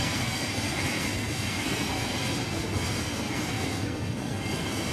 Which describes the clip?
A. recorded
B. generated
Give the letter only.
B